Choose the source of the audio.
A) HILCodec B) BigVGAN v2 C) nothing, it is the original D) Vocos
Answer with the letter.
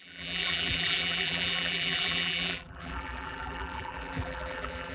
B